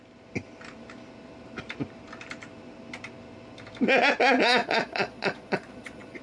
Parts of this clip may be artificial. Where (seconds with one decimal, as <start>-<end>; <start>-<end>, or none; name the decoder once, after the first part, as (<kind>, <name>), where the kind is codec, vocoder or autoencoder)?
4.6-6.2 (vocoder, Vocos)